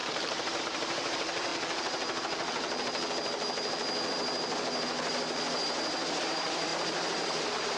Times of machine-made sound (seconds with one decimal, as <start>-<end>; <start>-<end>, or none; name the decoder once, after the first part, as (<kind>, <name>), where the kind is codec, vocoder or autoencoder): 0.0-1.5 (vocoder, BigVGAN v2); 6.2-7.8